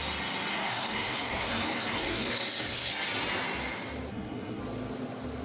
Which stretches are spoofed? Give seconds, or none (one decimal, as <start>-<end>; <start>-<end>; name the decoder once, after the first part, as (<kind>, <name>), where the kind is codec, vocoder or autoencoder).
0.5-2.9 (codec, SNAC); 4.1-4.6